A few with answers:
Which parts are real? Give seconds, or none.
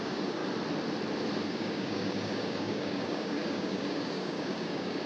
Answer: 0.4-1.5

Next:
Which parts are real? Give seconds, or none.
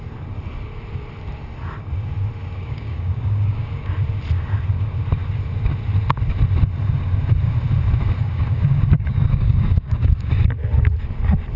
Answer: 0.0-2.6; 3.9-8.2; 10.3-11.6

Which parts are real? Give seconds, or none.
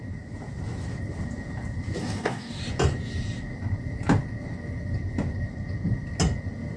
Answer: 0.0-2.0; 2.6-6.8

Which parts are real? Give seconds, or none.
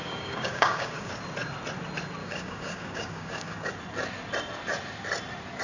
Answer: 1.1-2.2; 3.7-5.6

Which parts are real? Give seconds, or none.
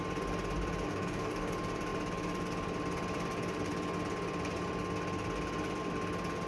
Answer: 0.0-0.9; 1.5-6.5